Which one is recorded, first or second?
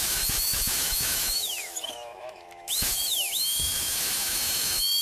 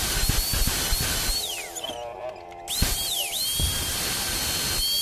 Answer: second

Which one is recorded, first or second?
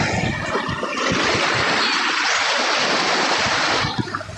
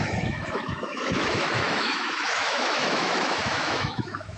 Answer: first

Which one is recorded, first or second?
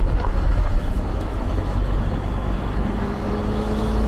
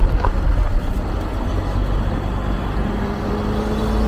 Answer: second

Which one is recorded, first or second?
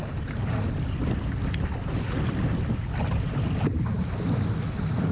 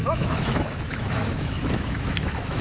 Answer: first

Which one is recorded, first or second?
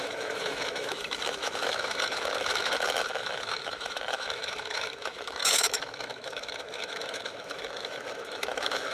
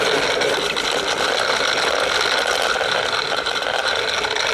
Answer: second